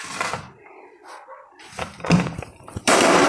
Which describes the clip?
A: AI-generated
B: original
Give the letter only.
A